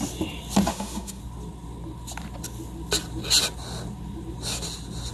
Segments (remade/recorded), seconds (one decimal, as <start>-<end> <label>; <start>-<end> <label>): 0.0-0.7 recorded; 0.7-1.2 remade; 1.2-5.1 recorded